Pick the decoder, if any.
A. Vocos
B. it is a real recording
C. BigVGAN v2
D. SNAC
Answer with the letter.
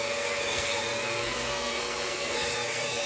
D